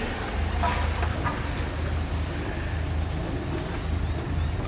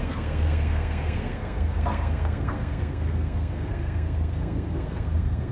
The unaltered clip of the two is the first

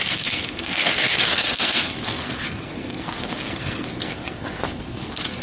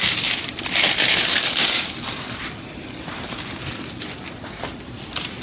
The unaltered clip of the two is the second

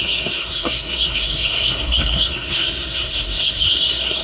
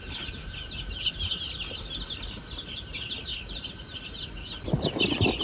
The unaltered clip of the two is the second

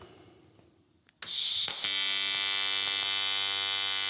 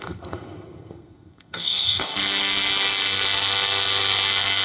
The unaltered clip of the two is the first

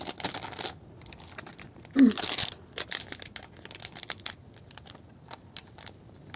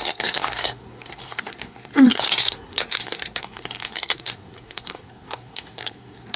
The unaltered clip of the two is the first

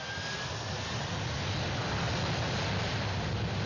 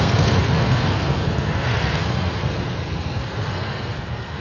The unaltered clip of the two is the first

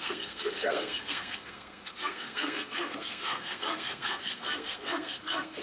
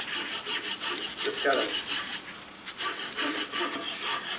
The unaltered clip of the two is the second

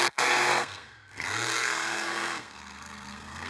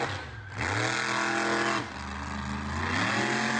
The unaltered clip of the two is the second